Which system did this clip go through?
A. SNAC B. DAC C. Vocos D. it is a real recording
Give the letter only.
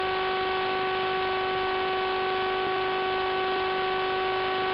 D